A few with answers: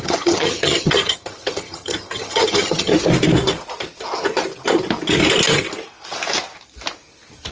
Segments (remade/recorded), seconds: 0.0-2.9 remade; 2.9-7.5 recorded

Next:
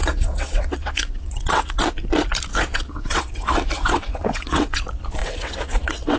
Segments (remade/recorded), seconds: 0.0-1.7 remade; 1.7-2.5 recorded; 2.5-4.8 remade; 4.8-5.2 recorded; 5.2-6.2 remade

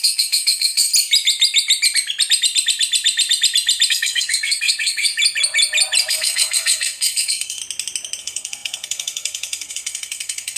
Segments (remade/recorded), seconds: 0.0-0.9 remade; 0.9-3.9 recorded; 3.9-5.1 remade; 5.1-6.1 recorded; 6.1-7.6 remade; 7.6-8.2 recorded; 8.2-10.6 remade

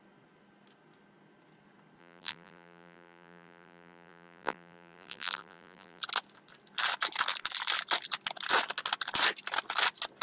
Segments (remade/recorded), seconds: 0.0-2.0 recorded; 2.0-6.0 remade; 6.0-10.2 recorded

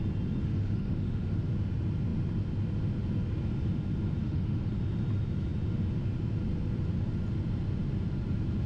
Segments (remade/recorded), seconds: 0.0-0.4 recorded; 0.4-1.4 remade; 1.4-4.2 recorded; 4.2-4.7 remade; 4.7-8.7 recorded

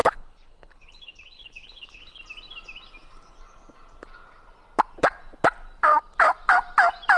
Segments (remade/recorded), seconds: 0.0-2.2 remade; 2.2-7.2 recorded